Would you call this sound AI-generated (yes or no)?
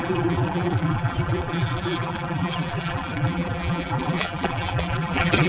yes